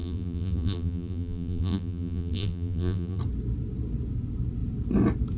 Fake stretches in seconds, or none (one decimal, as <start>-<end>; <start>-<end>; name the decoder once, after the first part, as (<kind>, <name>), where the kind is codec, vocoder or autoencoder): 0.0-3.2 (vocoder, BigVGAN v2)